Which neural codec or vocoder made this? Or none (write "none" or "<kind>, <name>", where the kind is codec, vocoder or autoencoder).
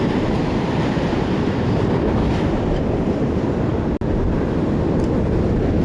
none